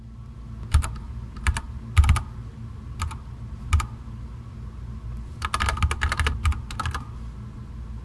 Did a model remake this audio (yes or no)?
no